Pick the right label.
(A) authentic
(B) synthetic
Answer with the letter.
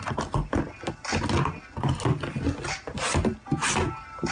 A